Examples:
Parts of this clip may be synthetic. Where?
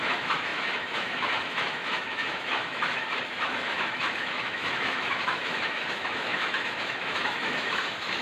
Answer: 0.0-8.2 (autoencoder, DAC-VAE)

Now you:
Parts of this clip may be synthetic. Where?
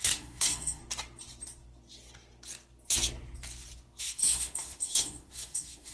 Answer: 0.0-0.8 (autoencoder, DAC-VAE); 4.0-5.9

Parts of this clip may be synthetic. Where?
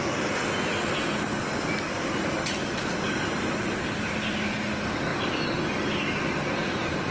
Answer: none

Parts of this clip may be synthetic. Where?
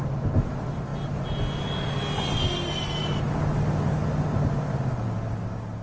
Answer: none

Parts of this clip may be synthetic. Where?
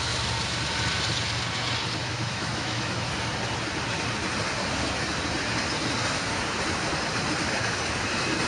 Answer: 2.0-3.1 (autoencoder, DAC-VAE)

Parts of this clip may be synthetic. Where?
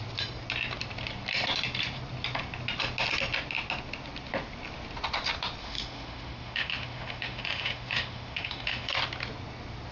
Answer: 5.6-8.9 (autoencoder, DAC-VAE)